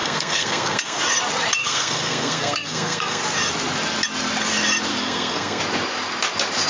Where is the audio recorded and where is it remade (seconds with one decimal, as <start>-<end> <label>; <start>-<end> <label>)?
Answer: 0.0-1.0 remade; 1.0-1.6 recorded; 1.6-3.2 remade; 3.2-4.9 recorded; 4.9-5.6 remade; 5.6-6.7 recorded